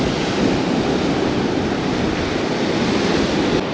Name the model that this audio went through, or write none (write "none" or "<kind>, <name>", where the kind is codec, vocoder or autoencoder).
none